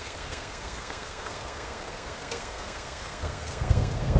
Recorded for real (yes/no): no